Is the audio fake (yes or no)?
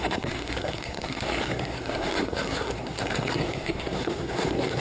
yes